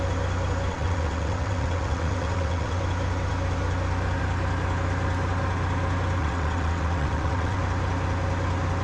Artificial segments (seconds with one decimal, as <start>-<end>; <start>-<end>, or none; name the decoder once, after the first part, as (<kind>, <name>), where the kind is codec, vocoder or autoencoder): 0.7-2.8 (vocoder, WaveNeXt); 6.2-7.6